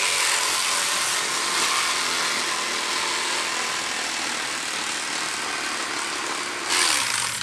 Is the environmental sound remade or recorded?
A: recorded